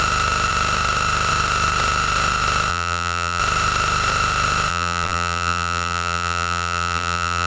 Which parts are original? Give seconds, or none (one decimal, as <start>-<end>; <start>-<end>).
0.0-2.7; 3.4-4.7